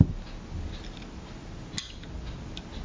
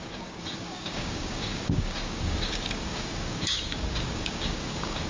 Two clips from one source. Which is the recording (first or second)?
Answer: first